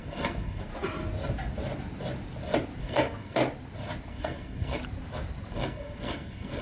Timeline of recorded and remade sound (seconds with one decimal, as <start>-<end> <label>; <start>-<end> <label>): 0.0-0.7 remade; 0.7-2.8 recorded; 2.8-3.4 remade; 3.4-4.1 recorded; 4.1-4.8 remade; 4.8-5.5 recorded; 5.5-6.6 remade